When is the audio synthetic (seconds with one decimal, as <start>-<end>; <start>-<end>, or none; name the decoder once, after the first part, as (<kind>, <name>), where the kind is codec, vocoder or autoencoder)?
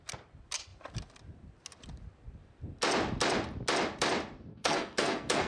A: 4.5-5.5 (codec, SNAC)